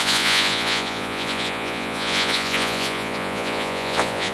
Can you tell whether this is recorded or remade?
remade